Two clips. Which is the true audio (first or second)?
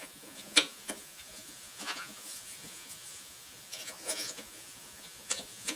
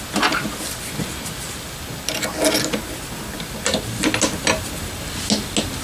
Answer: second